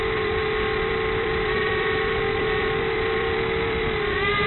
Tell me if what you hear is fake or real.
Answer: fake